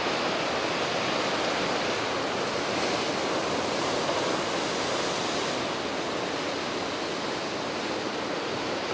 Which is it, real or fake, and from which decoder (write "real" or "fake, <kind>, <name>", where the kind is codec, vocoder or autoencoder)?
real